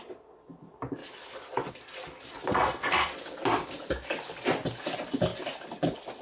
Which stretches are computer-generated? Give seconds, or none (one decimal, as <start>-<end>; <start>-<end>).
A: 2.5-3.1

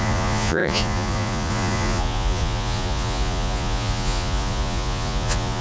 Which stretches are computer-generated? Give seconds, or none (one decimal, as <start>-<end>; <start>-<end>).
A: 0.0-5.6

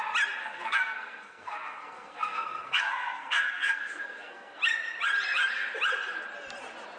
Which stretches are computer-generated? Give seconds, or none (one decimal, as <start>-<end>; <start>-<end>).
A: 0.4-4.6

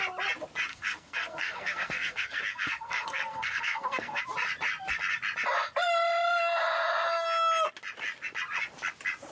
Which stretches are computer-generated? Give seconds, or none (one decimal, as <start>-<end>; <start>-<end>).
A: 0.7-4.2

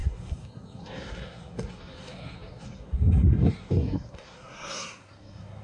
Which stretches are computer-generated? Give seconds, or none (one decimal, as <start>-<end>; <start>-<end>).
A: 0.0-5.6